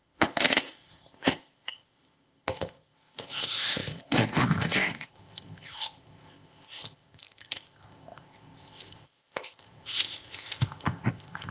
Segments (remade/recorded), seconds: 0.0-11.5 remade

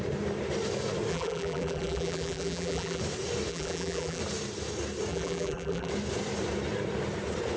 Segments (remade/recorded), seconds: 0.0-1.1 recorded; 1.1-3.0 remade; 3.0-3.5 recorded; 3.5-4.2 remade; 4.2-5.1 recorded; 5.1-5.9 remade; 5.9-7.6 recorded

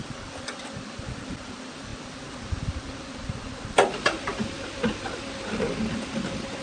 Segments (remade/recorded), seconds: 0.0-6.6 recorded

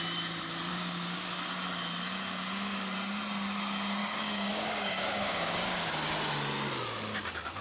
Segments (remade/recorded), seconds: 0.0-0.7 recorded; 0.7-1.3 remade; 1.3-4.0 recorded; 4.0-6.1 remade; 6.1-7.6 recorded

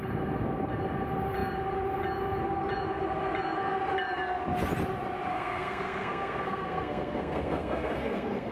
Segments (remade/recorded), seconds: 0.0-5.3 recorded; 5.3-8.5 remade

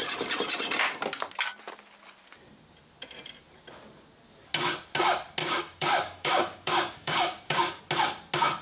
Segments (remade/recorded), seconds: 0.0-5.4 recorded; 5.4-7.8 remade; 7.8-8.6 recorded